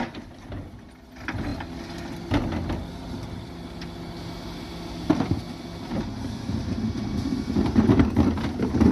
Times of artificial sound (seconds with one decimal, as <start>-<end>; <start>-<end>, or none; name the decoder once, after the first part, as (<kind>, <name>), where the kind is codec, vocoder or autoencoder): none